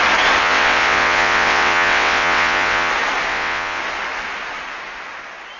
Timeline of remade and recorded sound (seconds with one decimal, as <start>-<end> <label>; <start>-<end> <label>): 0.0-0.4 recorded; 0.4-2.9 remade; 2.9-3.3 recorded; 3.3-3.8 remade; 3.8-5.6 recorded